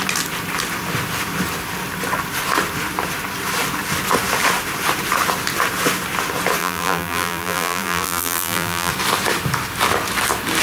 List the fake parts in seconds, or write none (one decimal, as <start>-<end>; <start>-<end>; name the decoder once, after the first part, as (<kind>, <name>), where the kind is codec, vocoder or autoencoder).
6.6-8.9 (vocoder, BigVGAN v2)